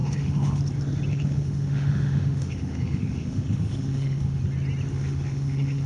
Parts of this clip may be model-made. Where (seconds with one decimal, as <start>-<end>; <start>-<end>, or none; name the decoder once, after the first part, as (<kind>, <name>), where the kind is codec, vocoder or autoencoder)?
0.0-0.6 (autoencoder, DAC-VAE); 1.1-4.4; 4.9-5.9